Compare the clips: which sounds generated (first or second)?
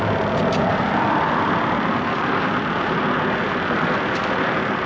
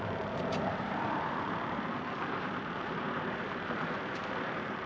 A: second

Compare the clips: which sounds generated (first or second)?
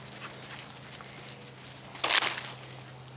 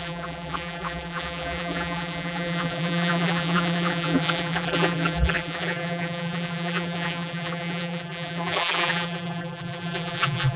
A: second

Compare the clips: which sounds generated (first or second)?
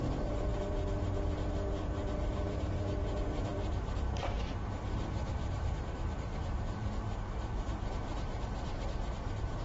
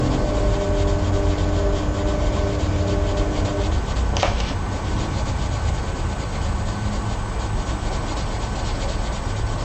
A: first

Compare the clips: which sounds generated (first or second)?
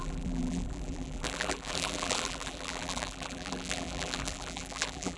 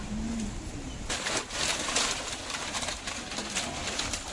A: first